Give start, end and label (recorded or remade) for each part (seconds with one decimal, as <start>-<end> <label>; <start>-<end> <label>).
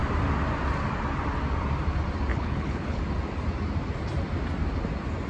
0.0-2.3 recorded; 2.3-3.0 remade; 3.0-5.3 recorded